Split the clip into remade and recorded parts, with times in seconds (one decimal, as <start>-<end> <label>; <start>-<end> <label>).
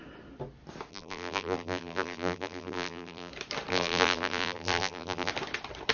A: 0.0-0.9 recorded; 0.9-3.3 remade; 3.3-3.7 recorded; 3.7-5.3 remade; 5.3-5.9 recorded